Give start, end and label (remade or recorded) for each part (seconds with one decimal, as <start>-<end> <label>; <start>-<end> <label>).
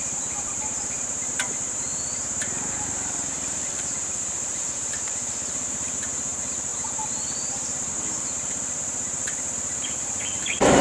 0.0-10.8 remade